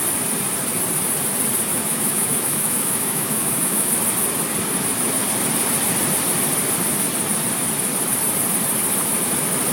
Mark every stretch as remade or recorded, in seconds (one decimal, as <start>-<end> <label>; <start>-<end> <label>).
0.0-1.7 recorded; 1.7-3.9 remade; 3.9-9.7 recorded